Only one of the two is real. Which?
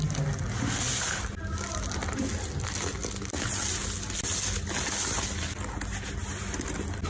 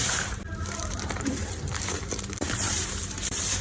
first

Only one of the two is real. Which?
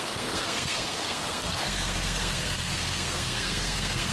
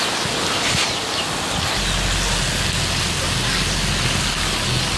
second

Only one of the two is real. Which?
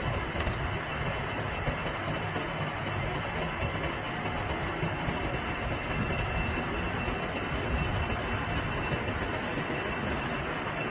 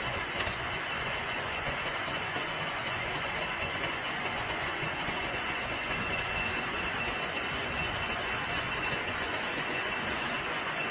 first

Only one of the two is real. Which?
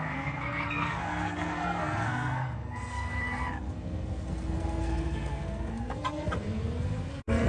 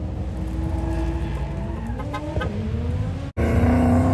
second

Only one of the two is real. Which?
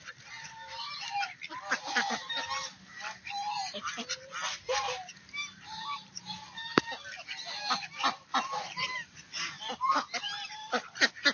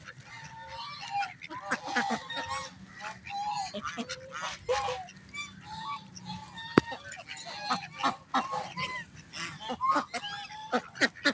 second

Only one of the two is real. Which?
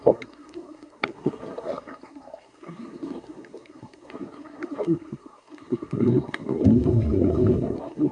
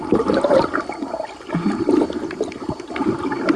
second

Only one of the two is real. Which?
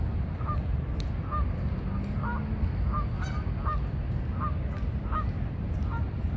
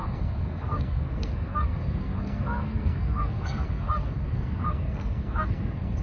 first